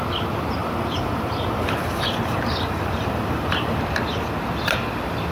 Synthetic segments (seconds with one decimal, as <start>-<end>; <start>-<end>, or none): 0.6-3.8